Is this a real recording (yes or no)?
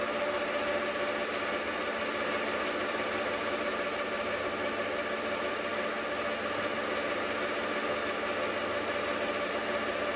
yes